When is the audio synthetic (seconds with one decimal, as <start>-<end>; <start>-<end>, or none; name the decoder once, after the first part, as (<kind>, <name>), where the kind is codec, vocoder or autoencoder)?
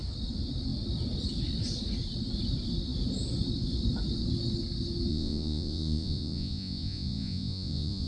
5.1-8.1 (vocoder, Vocos)